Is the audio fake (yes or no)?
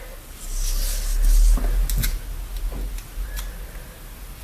no